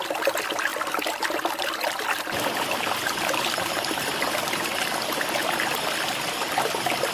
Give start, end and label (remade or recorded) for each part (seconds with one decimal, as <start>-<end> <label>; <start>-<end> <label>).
0.0-7.1 recorded